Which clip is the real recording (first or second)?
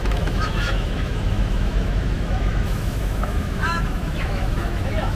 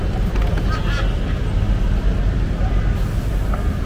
second